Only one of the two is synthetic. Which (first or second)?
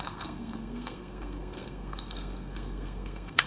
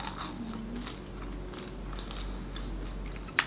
first